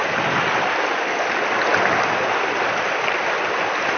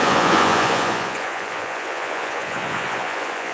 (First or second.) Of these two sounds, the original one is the first